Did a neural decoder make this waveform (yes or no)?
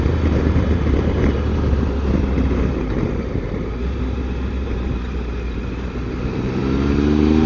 yes